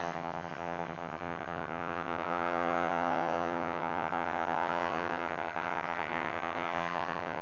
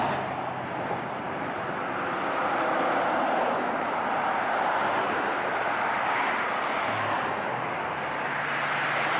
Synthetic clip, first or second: first